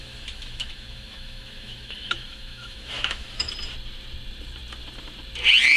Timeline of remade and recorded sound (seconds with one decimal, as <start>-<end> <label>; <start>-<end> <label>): 0.0-3.5 remade; 3.5-5.8 recorded